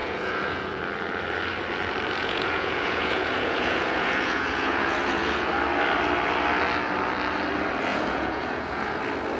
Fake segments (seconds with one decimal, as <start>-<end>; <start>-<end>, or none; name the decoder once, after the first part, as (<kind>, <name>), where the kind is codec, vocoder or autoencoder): 0.0-0.8 (vocoder, Vocos); 2.2-5.5; 7.9-9.0